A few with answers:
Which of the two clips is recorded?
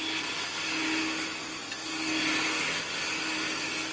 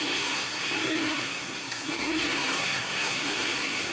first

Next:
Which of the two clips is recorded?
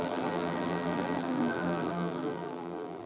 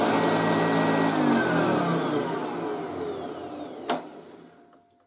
second